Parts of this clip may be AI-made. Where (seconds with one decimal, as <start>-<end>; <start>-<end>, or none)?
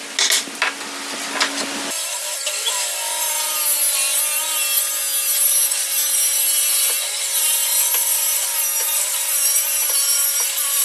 none